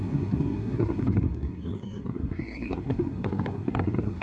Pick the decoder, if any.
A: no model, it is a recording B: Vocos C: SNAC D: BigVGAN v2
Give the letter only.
C